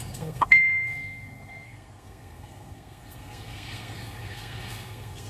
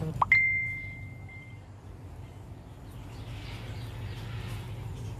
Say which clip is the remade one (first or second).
first